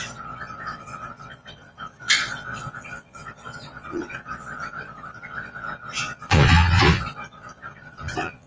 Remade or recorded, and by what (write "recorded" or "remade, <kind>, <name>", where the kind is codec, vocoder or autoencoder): remade, vocoder, Vocos